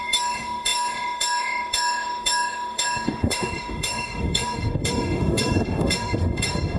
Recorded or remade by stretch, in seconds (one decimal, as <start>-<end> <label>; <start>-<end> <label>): 0.0-6.8 remade